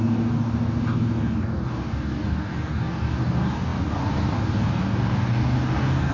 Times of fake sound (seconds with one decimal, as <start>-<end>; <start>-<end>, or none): 0.0-6.1